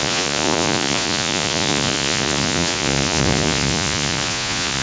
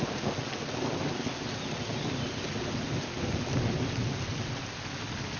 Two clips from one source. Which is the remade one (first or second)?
first